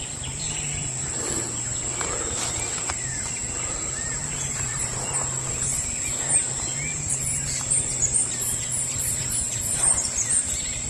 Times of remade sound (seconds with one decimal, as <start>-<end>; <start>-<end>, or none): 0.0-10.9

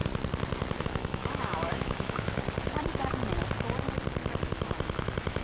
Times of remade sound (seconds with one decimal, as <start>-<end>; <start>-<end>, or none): 0.8-2.4; 4.4-5.4

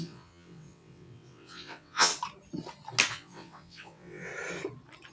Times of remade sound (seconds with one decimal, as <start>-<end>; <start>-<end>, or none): 0.0-2.1; 3.1-4.3

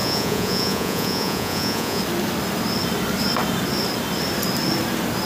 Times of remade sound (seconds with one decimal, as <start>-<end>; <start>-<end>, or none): 0.0-2.0

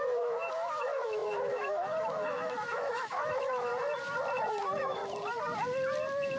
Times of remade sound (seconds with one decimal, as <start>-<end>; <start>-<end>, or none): 0.0-3.7; 4.5-5.0

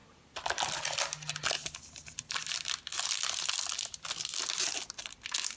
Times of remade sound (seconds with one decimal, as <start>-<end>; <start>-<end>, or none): none

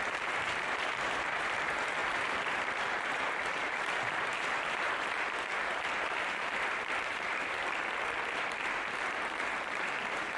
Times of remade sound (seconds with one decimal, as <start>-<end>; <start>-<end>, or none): 0.0-7.6; 8.3-10.4

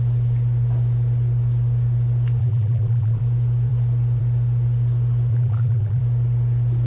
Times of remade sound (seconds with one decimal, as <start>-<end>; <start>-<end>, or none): 2.4-3.2; 5.3-6.0